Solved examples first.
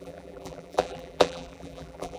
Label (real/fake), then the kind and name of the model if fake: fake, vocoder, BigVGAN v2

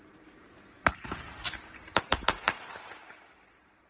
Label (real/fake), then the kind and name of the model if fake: fake, vocoder, BigVGAN v2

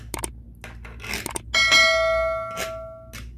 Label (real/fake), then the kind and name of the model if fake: real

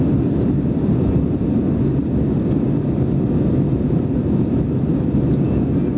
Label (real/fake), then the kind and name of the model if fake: real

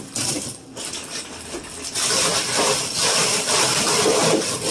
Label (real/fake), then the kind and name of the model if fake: real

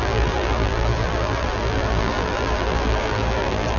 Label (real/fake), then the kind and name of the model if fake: fake, vocoder, BigVGAN v2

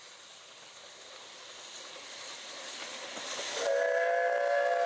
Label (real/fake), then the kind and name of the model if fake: real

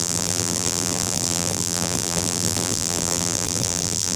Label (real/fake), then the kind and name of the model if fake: fake, vocoder, BigVGAN v2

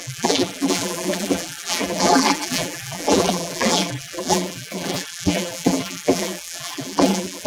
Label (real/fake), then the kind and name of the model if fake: fake, vocoder, BigVGAN v2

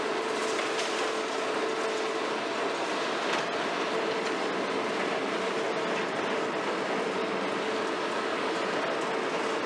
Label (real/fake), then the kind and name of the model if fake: real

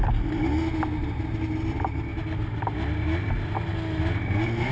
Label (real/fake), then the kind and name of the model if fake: real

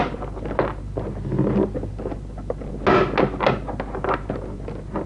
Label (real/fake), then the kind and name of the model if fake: real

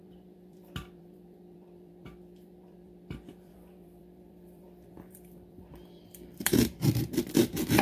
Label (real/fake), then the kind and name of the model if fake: fake, vocoder, BigVGAN v2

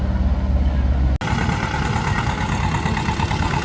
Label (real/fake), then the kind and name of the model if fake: real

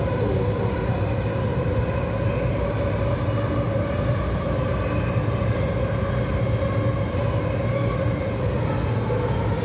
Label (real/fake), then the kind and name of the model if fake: real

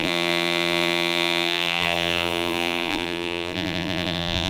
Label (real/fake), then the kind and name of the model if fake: fake, vocoder, BigVGAN v2